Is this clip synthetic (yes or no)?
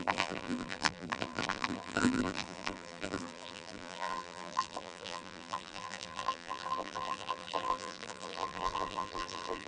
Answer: yes